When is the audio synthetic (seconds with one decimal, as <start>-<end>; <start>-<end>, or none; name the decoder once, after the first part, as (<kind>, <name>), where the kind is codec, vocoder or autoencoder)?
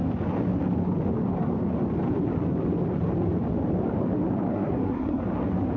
4.5-5.2 (codec, SNAC)